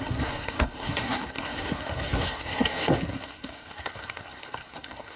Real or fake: fake